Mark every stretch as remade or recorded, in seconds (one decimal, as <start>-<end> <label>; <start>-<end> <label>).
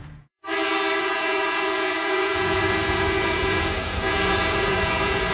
0.0-0.4 remade; 0.4-1.0 recorded; 1.0-5.3 remade